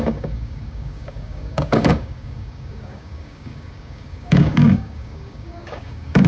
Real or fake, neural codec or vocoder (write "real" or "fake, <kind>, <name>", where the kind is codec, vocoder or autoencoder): fake, codec, DAC